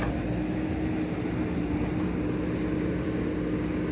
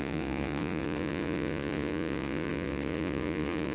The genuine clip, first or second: first